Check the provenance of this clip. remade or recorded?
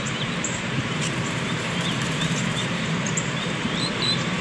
remade